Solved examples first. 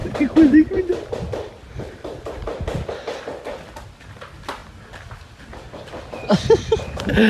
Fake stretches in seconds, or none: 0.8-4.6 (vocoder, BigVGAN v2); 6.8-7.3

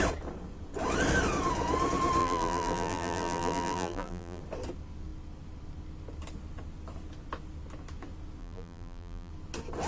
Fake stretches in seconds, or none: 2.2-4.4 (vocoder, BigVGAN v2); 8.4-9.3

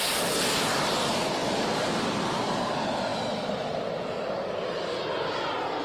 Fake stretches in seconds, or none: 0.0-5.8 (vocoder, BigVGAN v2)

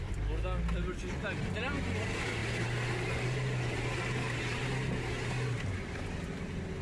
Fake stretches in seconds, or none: none